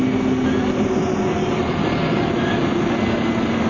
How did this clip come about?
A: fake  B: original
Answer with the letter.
B